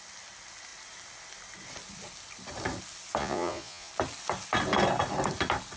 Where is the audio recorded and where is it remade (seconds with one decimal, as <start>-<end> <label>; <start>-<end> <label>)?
0.0-3.2 recorded; 3.2-3.9 remade; 3.9-5.8 recorded

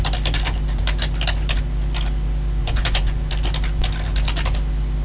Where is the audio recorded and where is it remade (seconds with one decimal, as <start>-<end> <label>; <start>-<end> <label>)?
0.0-2.6 recorded; 2.6-3.3 remade; 3.3-5.0 recorded

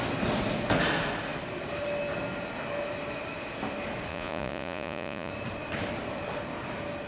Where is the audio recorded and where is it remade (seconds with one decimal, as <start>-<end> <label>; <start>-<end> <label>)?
0.0-4.1 recorded; 4.1-5.3 remade; 5.3-7.1 recorded

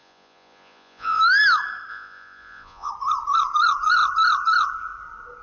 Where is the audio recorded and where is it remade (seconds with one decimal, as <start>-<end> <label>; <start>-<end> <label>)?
0.0-1.2 remade; 1.2-1.9 recorded; 1.9-2.9 remade; 2.9-5.4 recorded

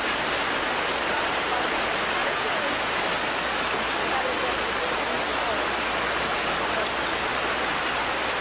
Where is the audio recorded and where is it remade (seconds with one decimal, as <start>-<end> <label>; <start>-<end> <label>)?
0.0-2.2 recorded; 2.2-3.0 remade; 3.0-8.4 recorded

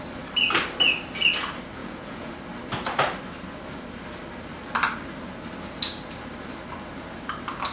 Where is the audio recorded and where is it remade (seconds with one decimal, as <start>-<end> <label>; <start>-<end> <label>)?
0.0-1.8 recorded; 1.8-2.3 remade; 2.3-7.7 recorded

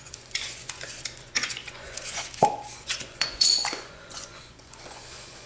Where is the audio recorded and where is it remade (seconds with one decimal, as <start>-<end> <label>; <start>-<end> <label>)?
0.0-5.5 remade

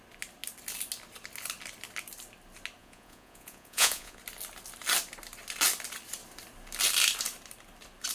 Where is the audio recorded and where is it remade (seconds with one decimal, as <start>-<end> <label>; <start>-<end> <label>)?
0.0-2.8 recorded; 2.8-4.2 remade; 4.2-8.1 recorded